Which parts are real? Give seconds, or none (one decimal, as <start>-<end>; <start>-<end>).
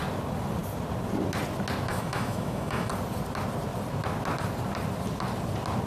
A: 0.0-1.9; 2.9-5.9